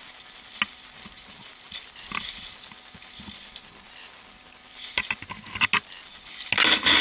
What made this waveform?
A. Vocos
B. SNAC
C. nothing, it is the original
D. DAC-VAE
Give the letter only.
C